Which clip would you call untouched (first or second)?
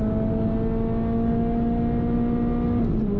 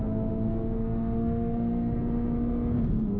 first